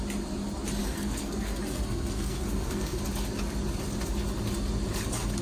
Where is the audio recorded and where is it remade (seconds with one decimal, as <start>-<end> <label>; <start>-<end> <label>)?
0.0-0.8 recorded; 0.8-3.0 remade; 3.0-5.4 recorded